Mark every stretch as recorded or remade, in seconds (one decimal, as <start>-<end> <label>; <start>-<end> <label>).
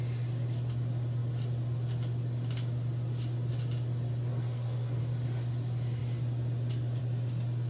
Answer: 0.0-4.3 recorded; 4.3-5.0 remade; 5.0-7.7 recorded